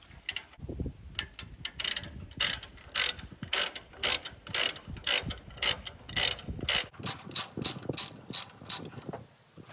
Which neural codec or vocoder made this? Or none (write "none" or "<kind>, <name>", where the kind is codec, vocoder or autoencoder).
none